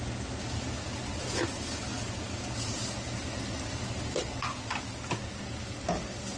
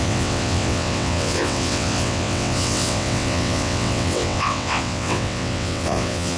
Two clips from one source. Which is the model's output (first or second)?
second